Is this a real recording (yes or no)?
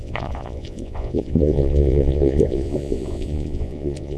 no